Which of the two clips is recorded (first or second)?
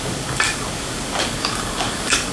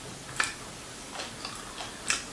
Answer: second